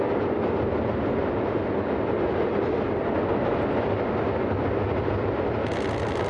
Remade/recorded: recorded